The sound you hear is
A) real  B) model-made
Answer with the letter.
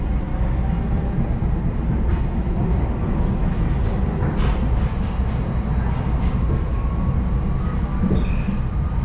A